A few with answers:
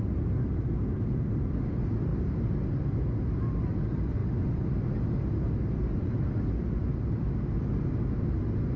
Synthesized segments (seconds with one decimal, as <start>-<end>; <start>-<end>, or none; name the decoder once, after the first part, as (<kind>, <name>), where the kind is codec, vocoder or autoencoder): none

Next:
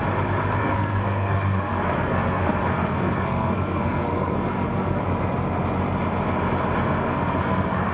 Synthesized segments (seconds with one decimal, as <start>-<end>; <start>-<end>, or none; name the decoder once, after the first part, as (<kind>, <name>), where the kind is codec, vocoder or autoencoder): 0.6-5.0 (codec, SNAC); 7.0-7.9

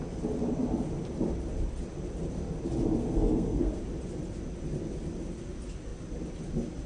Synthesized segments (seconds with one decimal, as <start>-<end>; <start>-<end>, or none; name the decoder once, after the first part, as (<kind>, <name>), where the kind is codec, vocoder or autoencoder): 3.0-3.8 (codec, SNAC)

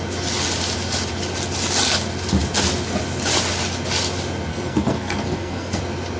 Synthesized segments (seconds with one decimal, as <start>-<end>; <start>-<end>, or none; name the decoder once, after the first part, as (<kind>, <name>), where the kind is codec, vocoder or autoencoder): 4.5-5.8 (codec, SNAC)